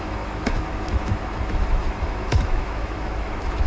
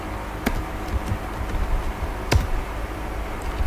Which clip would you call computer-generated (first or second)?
first